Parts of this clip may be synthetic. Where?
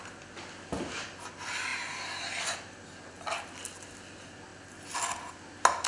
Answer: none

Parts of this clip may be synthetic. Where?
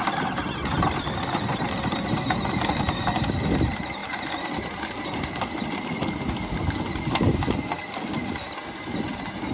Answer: none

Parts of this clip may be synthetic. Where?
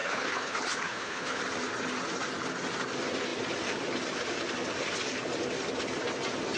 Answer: 0.0-1.4 (codec, HILCodec)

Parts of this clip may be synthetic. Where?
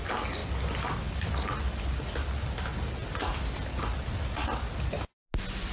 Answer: none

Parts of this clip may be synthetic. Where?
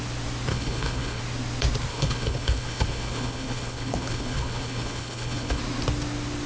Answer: 0.5-1.2 (codec, HILCodec); 1.9-5.6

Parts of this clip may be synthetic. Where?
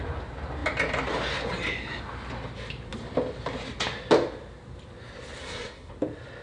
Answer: 5.4-5.9 (codec, SNAC)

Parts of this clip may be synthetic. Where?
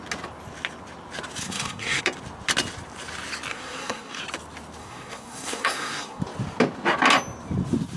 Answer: 1.4-2.0 (codec, SNAC); 3.5-4.2; 4.8-6.2